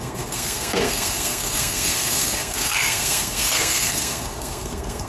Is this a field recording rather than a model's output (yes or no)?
no